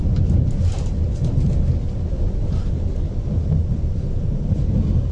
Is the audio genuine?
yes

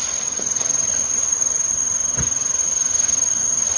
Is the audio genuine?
yes